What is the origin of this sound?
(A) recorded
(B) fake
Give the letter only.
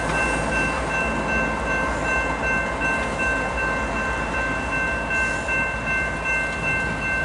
A